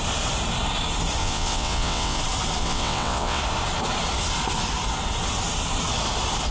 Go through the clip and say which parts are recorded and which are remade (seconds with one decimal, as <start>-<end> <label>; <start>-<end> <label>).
0.0-1.2 recorded; 1.2-2.2 remade; 2.2-2.6 recorded; 2.6-3.4 remade; 3.4-6.5 recorded